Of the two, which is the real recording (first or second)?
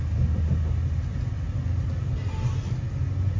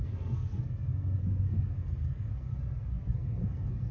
first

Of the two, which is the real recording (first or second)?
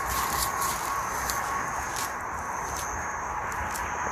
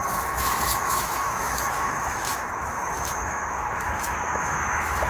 first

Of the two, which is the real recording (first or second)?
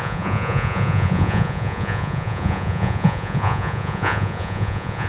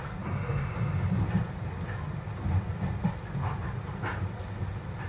second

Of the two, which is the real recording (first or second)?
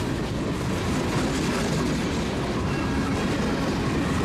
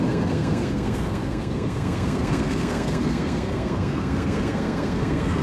first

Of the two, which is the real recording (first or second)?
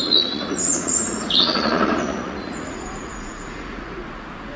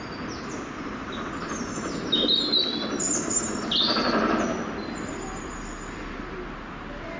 second